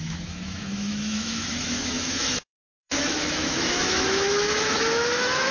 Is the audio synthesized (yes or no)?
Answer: yes